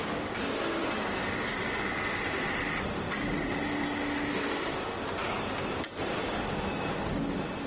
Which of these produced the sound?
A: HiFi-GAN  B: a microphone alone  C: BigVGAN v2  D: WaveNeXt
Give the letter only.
B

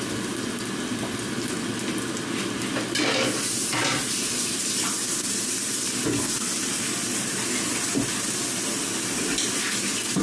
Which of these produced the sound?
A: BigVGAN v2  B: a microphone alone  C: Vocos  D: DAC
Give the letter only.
B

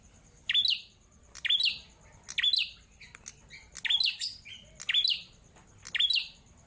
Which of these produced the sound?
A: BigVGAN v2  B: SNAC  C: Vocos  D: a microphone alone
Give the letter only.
D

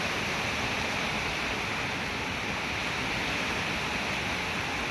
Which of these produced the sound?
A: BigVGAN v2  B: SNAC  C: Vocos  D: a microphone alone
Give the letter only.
D